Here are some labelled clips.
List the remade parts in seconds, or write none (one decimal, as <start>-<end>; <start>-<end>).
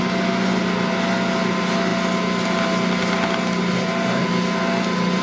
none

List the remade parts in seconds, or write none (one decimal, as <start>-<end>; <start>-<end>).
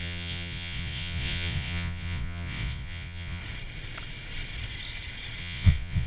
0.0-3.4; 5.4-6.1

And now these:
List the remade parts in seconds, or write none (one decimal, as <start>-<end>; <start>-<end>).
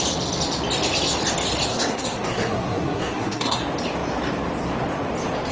1.7-3.6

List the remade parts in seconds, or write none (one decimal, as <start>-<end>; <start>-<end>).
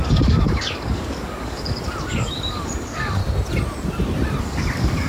0.0-3.2; 4.4-5.1